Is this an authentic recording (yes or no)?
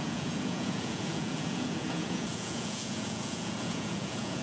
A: no